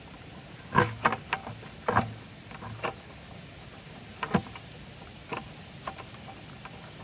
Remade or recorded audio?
recorded